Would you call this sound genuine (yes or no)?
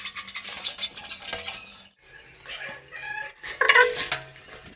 yes